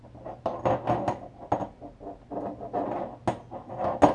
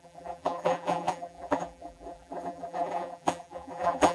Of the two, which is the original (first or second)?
first